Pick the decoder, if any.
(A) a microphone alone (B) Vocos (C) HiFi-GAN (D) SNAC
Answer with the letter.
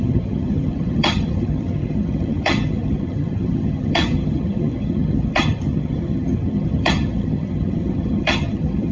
C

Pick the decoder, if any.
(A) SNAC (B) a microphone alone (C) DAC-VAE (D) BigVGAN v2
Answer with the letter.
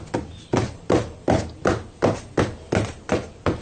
B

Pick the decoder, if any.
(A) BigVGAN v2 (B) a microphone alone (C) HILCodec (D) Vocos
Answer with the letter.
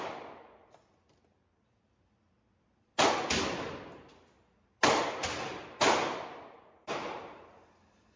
B